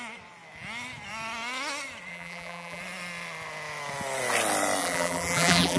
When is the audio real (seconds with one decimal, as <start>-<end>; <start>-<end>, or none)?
0.0-2.1; 2.8-4.8